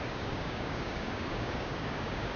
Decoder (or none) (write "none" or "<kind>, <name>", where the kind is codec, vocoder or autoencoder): codec, DAC